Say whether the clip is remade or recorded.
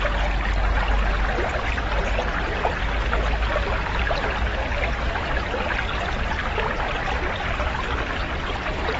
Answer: recorded